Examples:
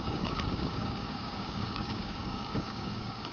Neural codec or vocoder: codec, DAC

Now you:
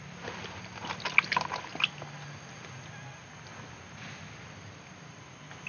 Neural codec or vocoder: none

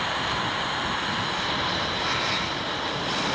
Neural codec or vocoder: none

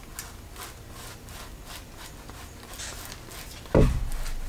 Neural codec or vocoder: none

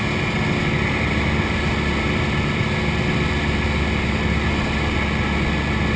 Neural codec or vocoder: none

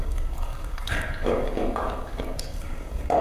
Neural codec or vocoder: codec, DAC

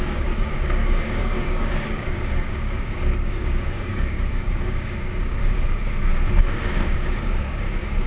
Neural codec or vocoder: codec, DAC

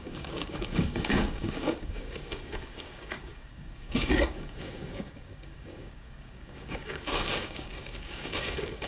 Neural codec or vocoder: codec, DAC